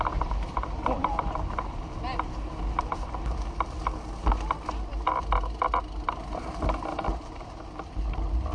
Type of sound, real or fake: real